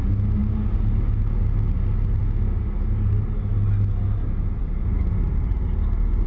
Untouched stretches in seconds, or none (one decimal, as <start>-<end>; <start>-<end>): 0.0-6.3